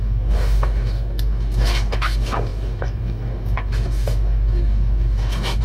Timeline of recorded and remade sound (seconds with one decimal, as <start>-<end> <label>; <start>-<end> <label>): 0.0-5.6 remade